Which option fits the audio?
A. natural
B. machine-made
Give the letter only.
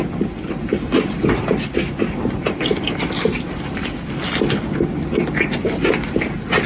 A